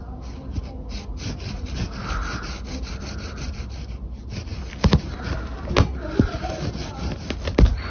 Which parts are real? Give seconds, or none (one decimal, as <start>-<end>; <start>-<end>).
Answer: 0.0-7.9

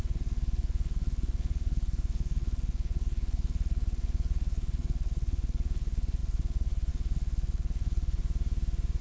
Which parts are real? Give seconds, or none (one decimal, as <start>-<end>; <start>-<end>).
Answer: 8.2-9.0

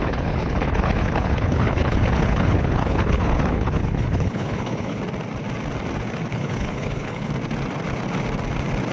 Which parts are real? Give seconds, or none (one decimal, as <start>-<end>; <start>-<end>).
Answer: 5.0-6.3; 7.3-8.9

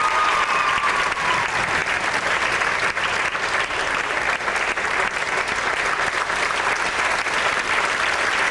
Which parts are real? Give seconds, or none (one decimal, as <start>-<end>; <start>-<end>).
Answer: 0.0-8.5